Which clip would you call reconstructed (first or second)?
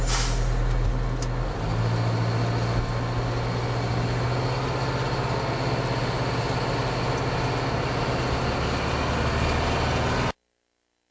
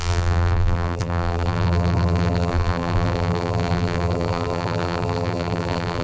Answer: second